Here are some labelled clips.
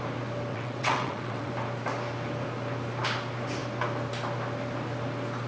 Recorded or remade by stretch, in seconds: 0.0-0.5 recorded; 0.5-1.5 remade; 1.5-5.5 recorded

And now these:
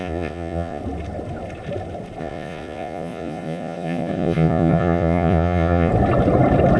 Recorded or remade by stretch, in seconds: 0.0-0.8 remade; 0.8-2.2 recorded; 2.2-5.9 remade; 5.9-6.8 recorded